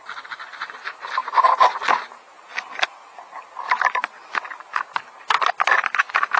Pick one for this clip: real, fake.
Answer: real